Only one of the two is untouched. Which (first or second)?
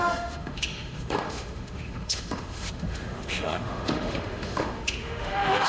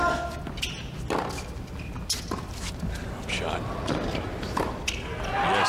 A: second